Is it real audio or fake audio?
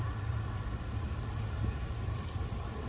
fake